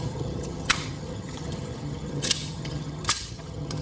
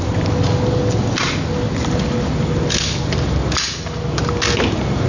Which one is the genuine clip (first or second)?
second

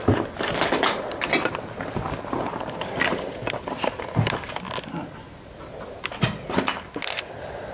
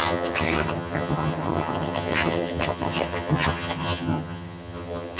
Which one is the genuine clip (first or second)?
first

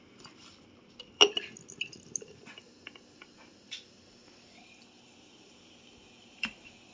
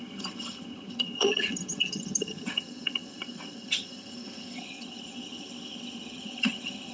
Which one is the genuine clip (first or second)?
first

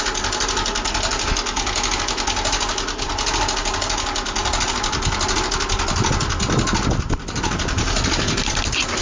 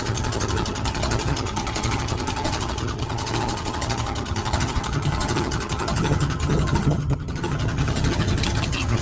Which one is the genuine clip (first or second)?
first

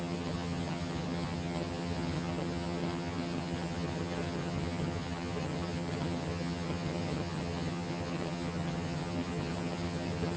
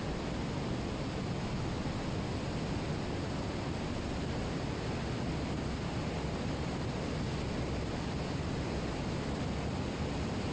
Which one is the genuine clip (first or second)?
second